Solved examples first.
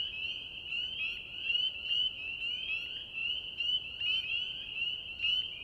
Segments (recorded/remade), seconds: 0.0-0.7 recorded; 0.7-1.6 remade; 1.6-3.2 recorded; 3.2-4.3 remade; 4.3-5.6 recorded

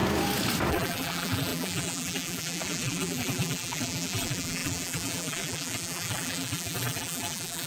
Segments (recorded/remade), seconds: 0.0-0.7 recorded; 0.7-7.7 remade

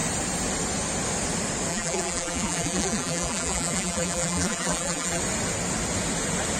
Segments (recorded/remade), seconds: 0.0-1.7 recorded; 1.7-5.2 remade; 5.2-6.6 recorded

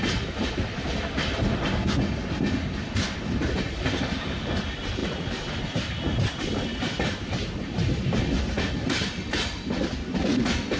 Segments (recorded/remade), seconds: 0.0-10.8 recorded

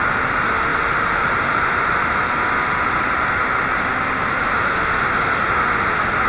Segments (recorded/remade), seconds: 0.0-0.7 recorded; 0.7-2.2 remade; 2.2-6.3 recorded

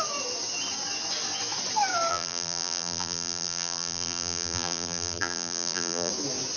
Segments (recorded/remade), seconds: 0.0-2.1 recorded; 2.1-6.1 remade; 6.1-6.6 recorded

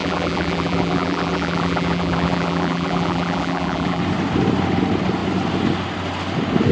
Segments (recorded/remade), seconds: 0.0-4.0 remade; 4.0-6.7 recorded